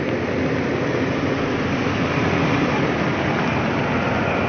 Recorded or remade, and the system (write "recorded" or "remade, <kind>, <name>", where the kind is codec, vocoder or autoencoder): recorded